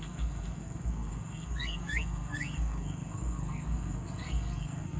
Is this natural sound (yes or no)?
no